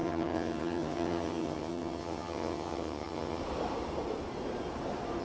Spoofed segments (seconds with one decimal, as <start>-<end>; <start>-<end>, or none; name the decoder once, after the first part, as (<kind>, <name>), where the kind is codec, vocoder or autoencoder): 0.0-3.4 (vocoder, HiFi-GAN)